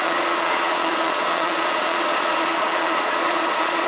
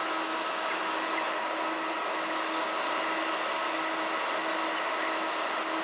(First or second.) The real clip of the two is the second